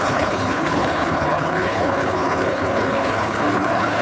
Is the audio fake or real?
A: fake